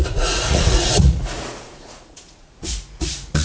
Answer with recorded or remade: remade